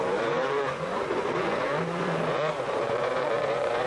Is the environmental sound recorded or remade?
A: remade